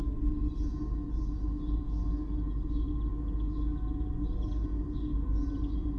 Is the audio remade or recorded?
recorded